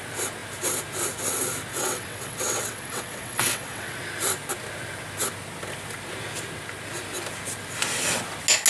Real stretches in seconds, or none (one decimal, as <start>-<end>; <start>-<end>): 0.0-1.7; 4.0-8.7